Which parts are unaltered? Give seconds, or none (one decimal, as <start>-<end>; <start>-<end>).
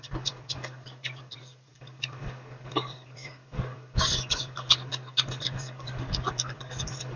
none